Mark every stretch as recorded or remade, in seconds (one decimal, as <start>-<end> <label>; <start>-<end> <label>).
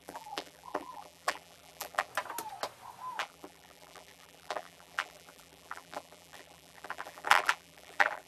0.0-2.1 remade; 2.1-3.2 recorded; 3.2-8.3 remade